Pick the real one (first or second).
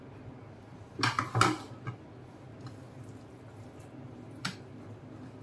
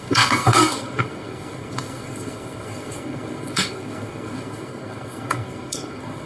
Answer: first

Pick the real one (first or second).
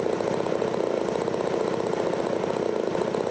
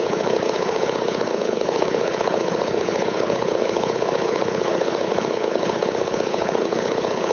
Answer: first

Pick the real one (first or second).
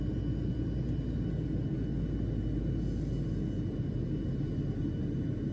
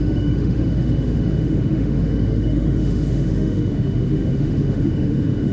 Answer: first